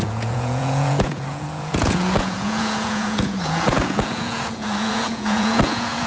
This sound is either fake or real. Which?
fake